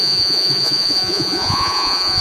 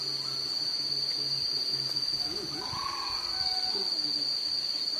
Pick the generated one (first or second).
first